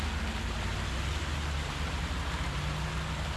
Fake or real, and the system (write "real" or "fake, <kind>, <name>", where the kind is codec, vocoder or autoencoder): real